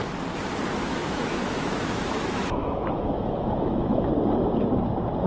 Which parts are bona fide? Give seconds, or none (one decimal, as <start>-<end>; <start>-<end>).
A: 0.0-0.9; 4.1-5.3